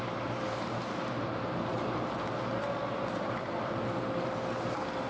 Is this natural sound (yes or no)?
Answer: yes